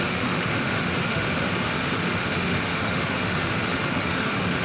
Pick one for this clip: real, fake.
fake